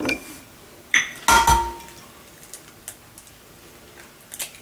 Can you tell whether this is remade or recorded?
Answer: recorded